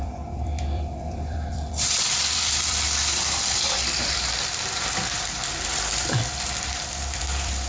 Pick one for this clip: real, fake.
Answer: fake